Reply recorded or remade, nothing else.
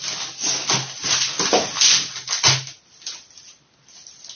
recorded